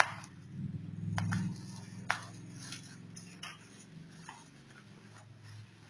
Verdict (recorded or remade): recorded